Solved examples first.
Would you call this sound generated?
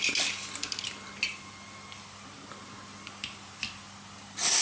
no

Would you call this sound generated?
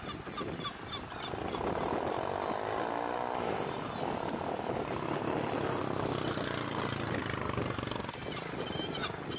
no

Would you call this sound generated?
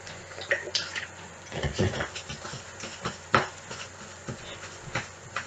yes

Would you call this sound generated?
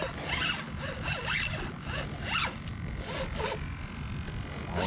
no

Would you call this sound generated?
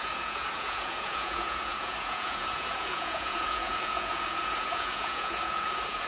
yes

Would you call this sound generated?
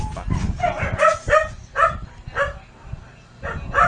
no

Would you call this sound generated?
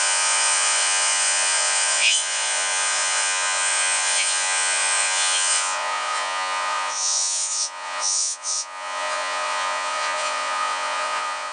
yes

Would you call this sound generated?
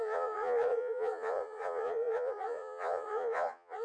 yes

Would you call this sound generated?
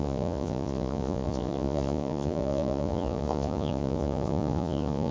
yes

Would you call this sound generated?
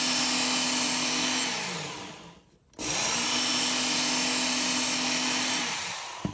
no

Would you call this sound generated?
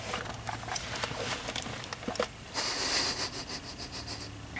no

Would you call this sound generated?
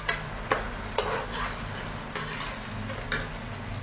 no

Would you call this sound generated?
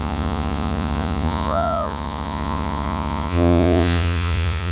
yes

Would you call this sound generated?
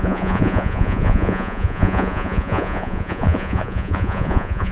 yes